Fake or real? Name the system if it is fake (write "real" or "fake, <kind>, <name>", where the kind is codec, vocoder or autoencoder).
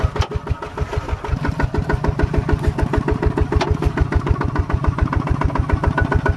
real